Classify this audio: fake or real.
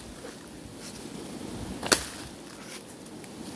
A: real